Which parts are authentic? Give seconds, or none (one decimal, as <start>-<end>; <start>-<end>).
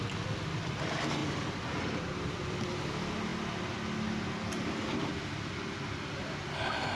0.0-7.0